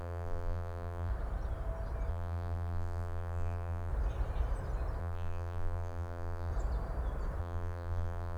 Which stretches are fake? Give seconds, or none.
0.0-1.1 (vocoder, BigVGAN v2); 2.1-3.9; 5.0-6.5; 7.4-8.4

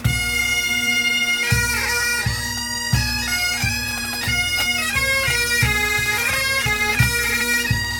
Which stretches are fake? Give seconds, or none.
0.0-2.1 (vocoder, BigVGAN v2); 3.7-8.0

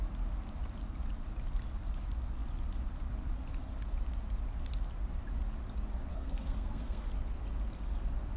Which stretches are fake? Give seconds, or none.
6.1-7.1 (codec, SNAC)

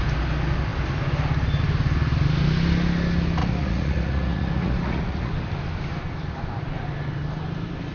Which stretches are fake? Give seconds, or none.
3.4-5.3 (vocoder, Vocos)

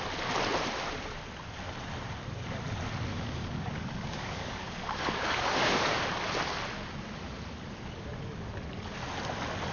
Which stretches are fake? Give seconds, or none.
3.1-6.0 (codec, DAC)